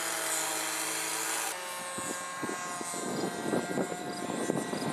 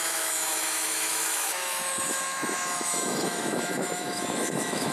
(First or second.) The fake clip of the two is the second